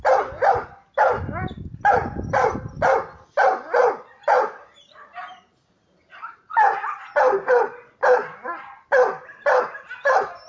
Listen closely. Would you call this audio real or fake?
real